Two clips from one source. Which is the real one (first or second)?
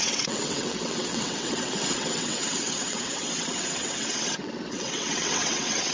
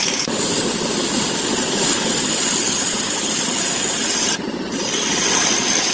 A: second